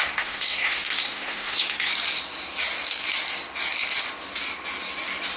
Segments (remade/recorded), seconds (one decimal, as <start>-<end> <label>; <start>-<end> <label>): 0.0-1.9 remade; 1.9-5.4 recorded